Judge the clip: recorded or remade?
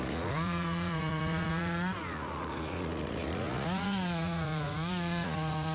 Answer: remade